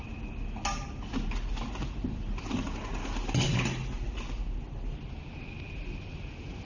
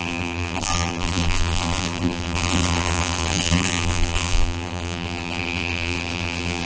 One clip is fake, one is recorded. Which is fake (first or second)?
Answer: second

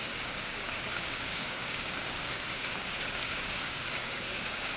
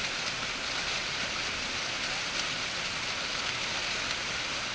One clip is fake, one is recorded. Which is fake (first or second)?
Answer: first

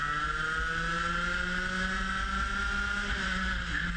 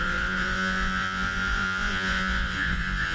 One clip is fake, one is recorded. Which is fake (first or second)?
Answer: second